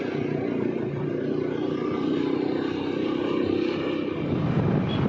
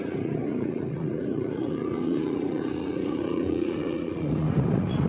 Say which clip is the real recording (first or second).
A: first